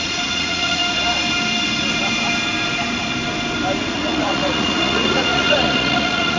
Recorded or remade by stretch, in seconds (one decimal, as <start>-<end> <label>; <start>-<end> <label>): 0.0-0.8 remade; 0.8-3.8 recorded; 3.8-6.4 remade